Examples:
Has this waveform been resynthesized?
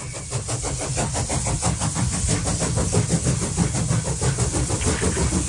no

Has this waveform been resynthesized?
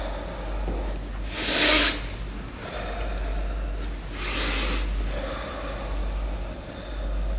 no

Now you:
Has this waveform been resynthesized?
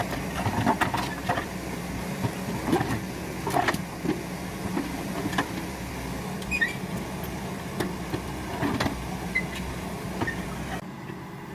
no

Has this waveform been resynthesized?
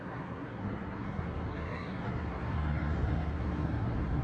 yes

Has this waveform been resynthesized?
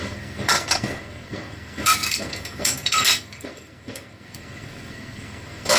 yes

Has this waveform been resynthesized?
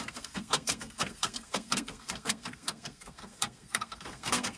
yes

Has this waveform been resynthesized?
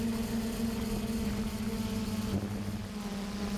no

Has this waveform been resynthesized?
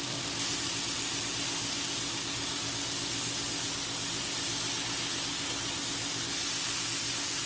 no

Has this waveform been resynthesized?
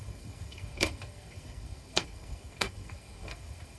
yes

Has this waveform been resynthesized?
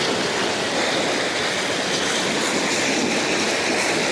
no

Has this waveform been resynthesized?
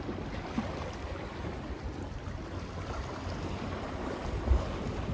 no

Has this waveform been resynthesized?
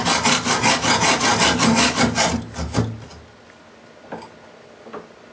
no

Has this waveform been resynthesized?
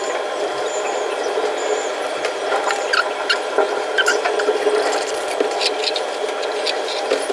no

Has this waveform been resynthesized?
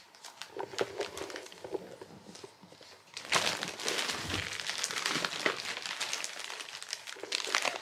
no